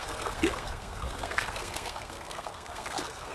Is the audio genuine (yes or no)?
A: no